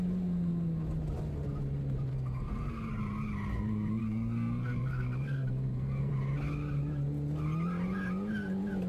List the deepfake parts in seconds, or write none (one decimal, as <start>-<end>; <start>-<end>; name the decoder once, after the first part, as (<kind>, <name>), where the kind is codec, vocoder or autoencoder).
2.1-2.9 (codec, SNAC); 4.0-6.1